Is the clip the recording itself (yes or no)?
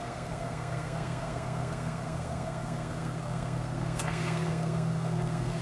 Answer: no